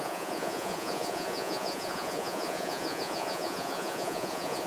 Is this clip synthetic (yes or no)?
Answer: yes